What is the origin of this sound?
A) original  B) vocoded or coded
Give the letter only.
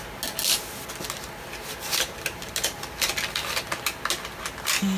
A